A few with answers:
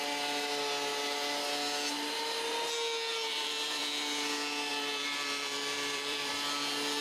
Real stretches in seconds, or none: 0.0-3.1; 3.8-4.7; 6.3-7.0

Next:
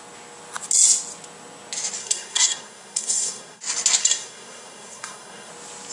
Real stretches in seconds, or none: 0.0-2.0; 3.6-4.0; 5.5-5.9